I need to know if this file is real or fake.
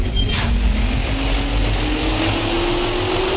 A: real